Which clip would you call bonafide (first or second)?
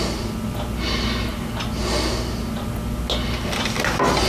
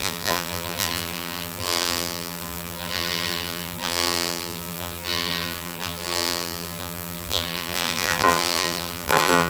first